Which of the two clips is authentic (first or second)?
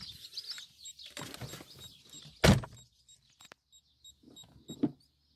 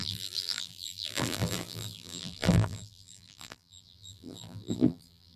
first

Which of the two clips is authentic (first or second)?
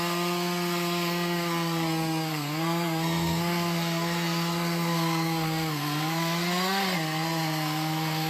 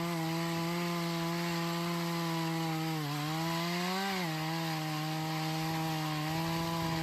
second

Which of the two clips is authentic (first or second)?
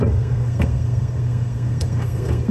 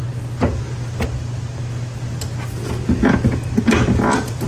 second